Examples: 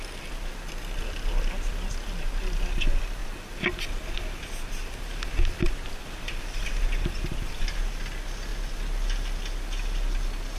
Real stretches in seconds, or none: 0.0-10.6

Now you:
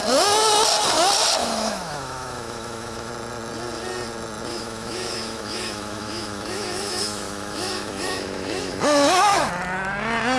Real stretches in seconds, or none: 0.0-1.4; 3.1-4.5; 9.5-10.4

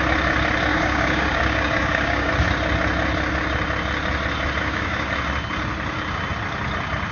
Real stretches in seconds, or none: 0.0-0.7; 2.3-4.6; 5.1-7.1

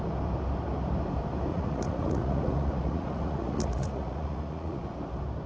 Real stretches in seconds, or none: 0.0-1.5; 4.8-5.5